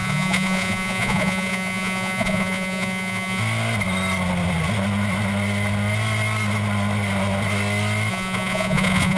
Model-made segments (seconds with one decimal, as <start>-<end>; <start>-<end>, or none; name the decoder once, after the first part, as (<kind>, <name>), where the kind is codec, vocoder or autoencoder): 0.0-3.4 (vocoder, Vocos); 8.1-9.2